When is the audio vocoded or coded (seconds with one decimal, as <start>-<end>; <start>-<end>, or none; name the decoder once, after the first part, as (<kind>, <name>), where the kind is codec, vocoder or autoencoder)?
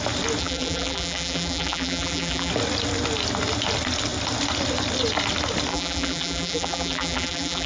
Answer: 0.4-2.5 (vocoder, BigVGAN v2); 5.7-7.7